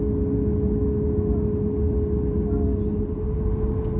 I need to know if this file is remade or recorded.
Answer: recorded